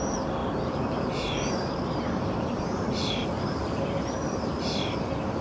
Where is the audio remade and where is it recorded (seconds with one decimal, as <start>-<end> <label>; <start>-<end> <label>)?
0.0-0.4 recorded; 0.4-3.6 remade; 3.6-5.4 recorded